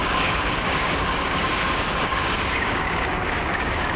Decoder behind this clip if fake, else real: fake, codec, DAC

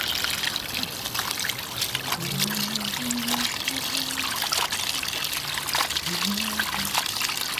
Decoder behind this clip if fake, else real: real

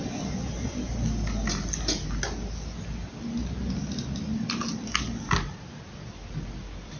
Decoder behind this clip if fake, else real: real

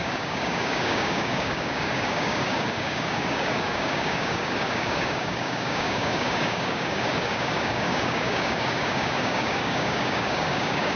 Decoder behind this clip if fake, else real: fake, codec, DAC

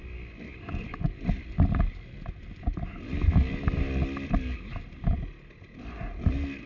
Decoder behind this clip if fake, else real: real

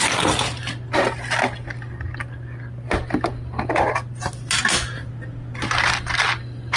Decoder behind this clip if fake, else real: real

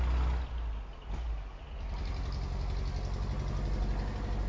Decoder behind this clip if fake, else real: real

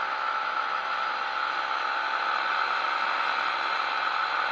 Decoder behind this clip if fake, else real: real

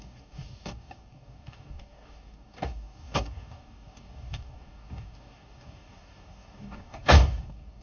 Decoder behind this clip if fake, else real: fake, codec, DAC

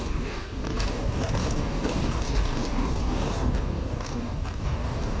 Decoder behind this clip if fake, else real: fake, codec, DAC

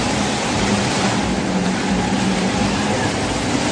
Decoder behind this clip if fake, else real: real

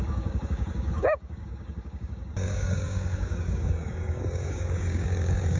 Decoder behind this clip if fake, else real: fake, codec, DAC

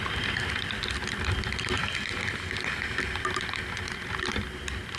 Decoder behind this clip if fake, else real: real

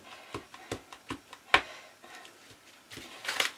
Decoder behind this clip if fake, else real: real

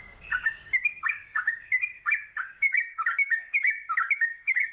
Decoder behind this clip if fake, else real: fake, codec, DAC